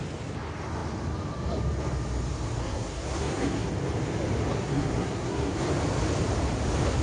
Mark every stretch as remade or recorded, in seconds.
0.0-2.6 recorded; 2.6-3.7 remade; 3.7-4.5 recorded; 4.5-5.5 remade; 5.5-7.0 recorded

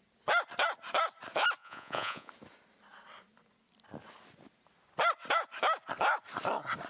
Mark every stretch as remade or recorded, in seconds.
0.0-1.6 recorded; 1.6-2.3 remade; 2.3-6.9 recorded

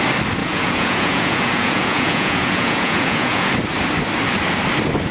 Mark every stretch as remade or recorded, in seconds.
0.0-0.4 recorded; 0.4-3.5 remade; 3.5-5.1 recorded